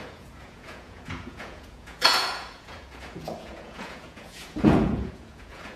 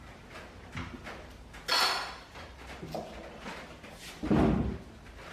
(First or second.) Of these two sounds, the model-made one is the first